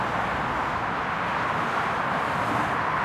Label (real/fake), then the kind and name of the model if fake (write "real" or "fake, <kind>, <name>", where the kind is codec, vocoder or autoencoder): real